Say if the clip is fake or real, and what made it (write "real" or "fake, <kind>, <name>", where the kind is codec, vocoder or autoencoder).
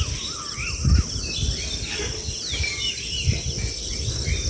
real